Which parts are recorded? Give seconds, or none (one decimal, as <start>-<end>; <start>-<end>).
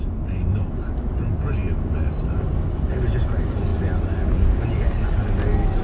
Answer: 0.0-5.8